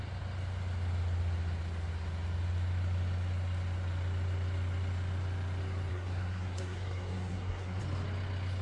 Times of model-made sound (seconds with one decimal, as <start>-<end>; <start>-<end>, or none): 5.9-7.8